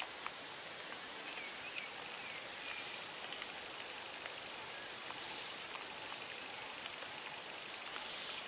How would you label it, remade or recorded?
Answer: recorded